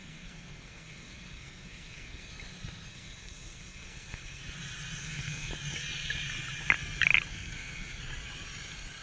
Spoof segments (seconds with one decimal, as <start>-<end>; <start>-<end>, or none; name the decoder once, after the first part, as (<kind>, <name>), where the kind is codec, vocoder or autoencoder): 0.0-2.3 (codec, SNAC); 2.9-4.4; 5.0-5.5; 7.3-8.0